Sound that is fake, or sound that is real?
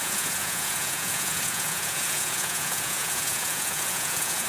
fake